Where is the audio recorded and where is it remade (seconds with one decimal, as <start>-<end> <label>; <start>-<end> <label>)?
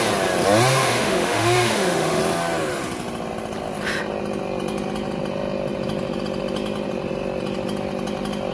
0.0-0.7 recorded; 0.7-2.2 remade; 2.2-8.5 recorded